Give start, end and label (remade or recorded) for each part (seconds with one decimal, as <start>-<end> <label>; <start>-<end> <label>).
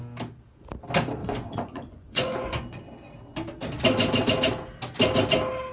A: 0.0-1.2 recorded; 1.2-2.8 remade; 2.8-5.7 recorded